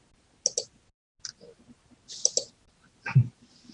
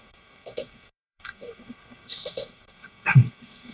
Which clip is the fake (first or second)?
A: second